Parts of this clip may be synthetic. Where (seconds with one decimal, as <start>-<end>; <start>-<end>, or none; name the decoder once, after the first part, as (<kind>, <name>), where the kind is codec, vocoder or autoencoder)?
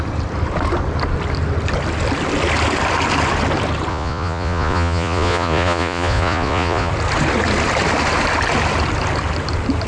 3.9-6.9 (vocoder, Vocos)